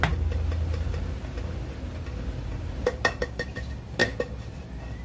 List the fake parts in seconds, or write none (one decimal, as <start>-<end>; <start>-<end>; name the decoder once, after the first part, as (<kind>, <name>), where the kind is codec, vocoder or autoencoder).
none